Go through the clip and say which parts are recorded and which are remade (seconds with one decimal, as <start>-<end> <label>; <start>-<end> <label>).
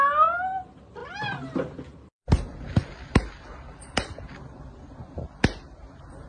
0.0-6.3 recorded